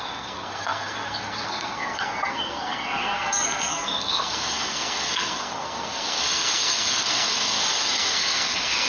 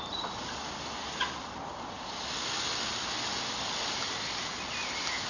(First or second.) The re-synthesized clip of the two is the first